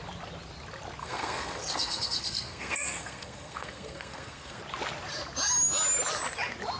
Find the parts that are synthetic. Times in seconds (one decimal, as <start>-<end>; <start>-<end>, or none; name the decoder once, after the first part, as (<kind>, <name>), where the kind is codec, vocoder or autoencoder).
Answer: 1.0-4.6 (codec, SNAC)